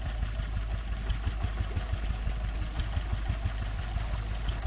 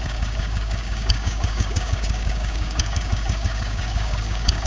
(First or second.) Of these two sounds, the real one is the first